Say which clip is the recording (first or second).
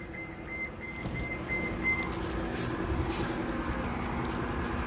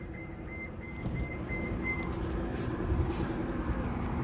first